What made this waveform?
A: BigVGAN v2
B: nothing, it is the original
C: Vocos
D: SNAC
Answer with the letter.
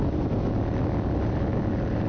B